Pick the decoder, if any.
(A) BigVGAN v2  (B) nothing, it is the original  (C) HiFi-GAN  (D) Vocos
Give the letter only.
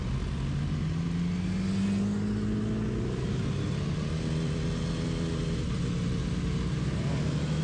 B